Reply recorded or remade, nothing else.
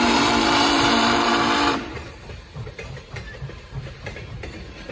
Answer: remade